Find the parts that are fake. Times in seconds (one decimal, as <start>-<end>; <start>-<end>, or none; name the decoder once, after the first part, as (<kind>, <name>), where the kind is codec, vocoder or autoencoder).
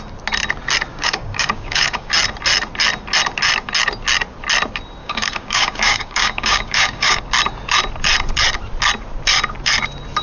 0.9-2.1 (codec, DAC); 5.0-7.2